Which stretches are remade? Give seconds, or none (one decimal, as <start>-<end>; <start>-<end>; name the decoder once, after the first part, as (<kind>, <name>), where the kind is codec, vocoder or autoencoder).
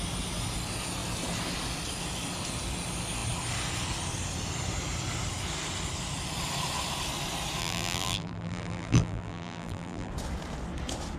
7.6-10.1 (vocoder, BigVGAN v2)